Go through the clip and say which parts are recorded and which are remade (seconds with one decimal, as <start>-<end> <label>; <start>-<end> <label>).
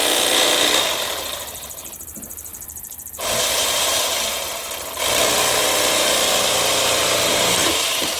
0.0-1.0 recorded; 1.0-8.2 remade